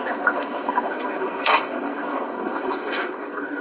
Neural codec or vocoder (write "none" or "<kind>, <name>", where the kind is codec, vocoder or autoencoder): codec, SNAC